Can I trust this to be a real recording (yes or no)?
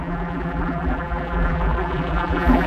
no